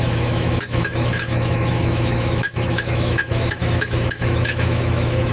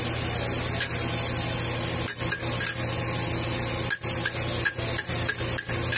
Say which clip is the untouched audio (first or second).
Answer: second